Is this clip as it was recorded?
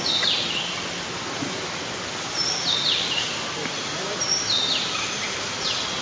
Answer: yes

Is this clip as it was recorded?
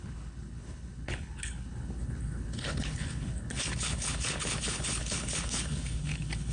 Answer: no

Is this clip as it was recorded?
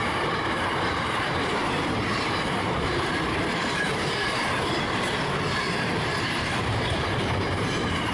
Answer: no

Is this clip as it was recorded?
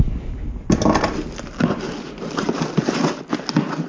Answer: yes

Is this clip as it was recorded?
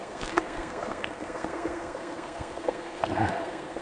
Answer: no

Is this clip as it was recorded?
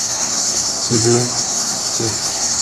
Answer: no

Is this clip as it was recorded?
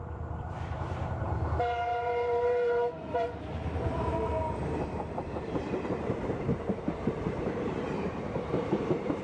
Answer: no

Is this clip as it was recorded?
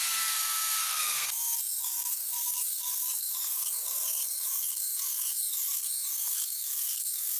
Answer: no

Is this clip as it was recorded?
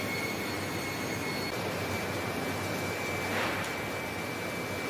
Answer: yes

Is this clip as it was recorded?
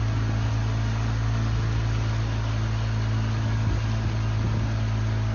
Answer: yes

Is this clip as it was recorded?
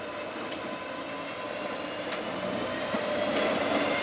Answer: yes